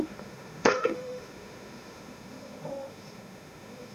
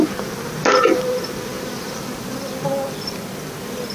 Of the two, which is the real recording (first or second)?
second